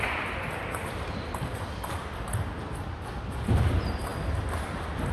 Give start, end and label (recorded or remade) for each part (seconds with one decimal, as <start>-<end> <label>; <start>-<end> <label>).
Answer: 0.0-4.1 remade; 4.1-4.6 recorded; 4.6-5.1 remade